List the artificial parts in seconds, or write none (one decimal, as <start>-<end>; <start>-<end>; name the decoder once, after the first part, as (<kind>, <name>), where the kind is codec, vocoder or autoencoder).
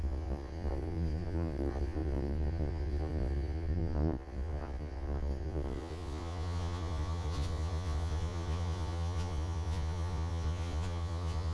0.0-11.5 (vocoder, Vocos)